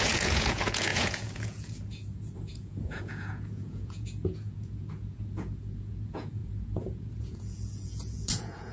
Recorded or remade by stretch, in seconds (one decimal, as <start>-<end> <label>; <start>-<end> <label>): 0.0-8.7 remade